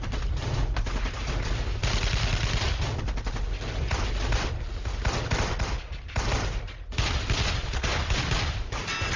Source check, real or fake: real